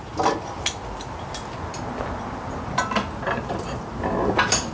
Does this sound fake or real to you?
real